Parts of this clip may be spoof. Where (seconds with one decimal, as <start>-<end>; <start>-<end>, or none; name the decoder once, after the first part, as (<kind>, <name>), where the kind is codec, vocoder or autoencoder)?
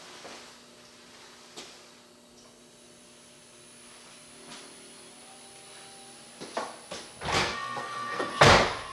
7.4-8.3 (codec, SNAC)